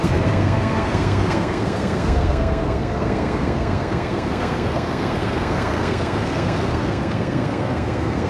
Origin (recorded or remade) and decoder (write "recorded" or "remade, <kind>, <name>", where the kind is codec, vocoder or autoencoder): remade, codec, SNAC